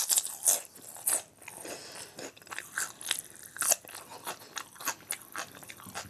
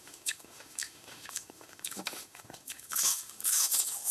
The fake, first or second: second